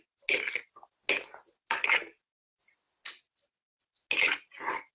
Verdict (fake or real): real